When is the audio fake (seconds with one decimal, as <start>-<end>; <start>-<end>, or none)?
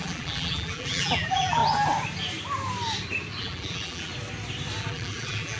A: 0.0-1.6; 3.4-4.1; 4.8-5.6